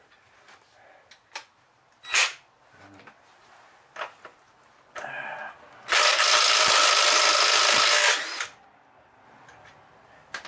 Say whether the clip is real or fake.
real